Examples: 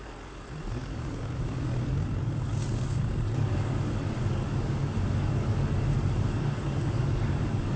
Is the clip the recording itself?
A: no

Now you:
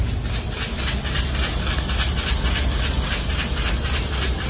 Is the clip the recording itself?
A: yes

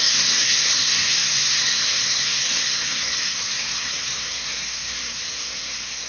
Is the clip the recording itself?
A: no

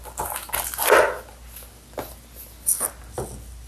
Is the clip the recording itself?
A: yes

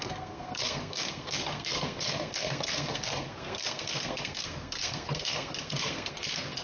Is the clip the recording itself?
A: no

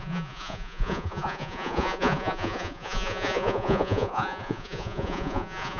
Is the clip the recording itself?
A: no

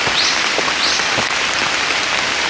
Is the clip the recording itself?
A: yes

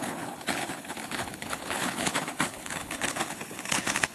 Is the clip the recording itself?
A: no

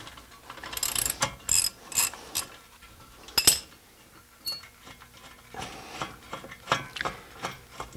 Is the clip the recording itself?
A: yes